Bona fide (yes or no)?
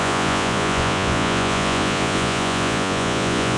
no